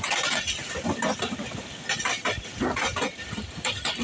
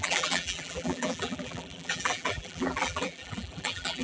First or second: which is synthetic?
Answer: second